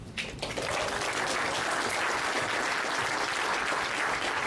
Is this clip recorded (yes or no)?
yes